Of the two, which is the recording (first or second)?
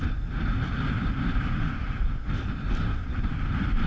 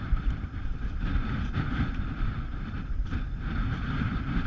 first